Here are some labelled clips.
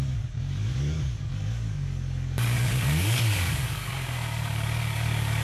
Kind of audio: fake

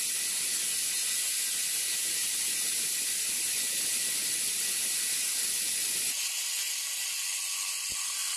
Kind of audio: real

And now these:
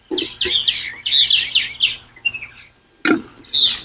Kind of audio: real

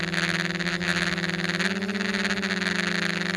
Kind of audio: real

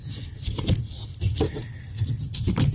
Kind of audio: real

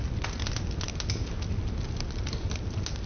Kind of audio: real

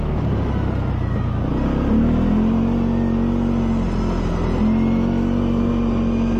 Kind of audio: real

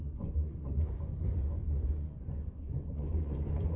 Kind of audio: fake